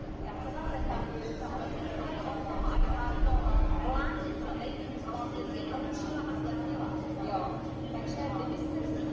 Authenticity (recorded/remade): recorded